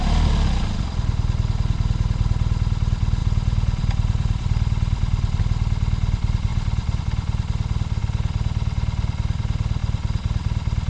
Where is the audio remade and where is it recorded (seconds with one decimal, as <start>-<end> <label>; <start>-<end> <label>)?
0.0-3.2 recorded; 3.2-5.4 remade; 5.4-6.5 recorded; 6.5-7.0 remade; 7.0-10.9 recorded